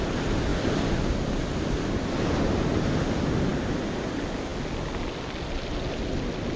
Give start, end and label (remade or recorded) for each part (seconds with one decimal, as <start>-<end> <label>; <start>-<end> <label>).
0.0-6.6 recorded